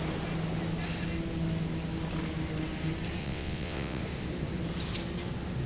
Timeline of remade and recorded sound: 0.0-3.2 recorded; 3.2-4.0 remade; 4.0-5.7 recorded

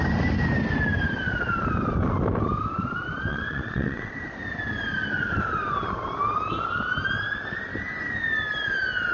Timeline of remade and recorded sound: 0.0-3.3 recorded; 3.3-4.1 remade; 4.1-9.1 recorded

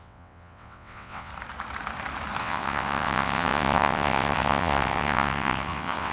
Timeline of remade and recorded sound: 0.0-1.3 remade; 1.3-2.4 recorded; 2.4-6.1 remade

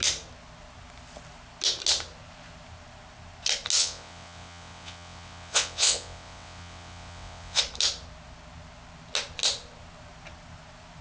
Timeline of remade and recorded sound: 0.0-3.8 recorded; 3.8-7.6 remade; 7.6-11.0 recorded